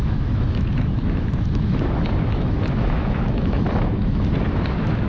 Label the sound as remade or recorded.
remade